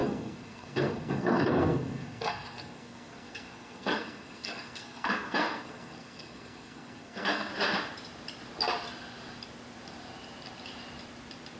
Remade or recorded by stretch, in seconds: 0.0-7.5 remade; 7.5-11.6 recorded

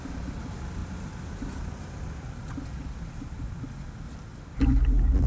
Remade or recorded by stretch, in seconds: 0.0-5.3 recorded